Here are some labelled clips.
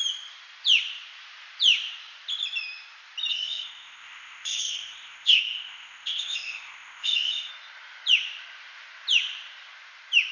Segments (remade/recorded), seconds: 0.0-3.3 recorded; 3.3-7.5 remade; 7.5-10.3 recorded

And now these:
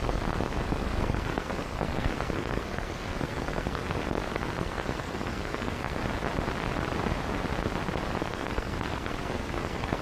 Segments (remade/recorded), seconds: 0.0-6.0 remade; 6.0-8.2 recorded; 8.2-10.0 remade

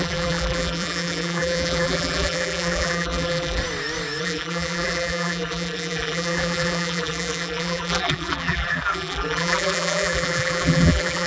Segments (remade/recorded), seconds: 0.0-3.6 remade; 3.6-4.2 recorded; 4.2-11.3 remade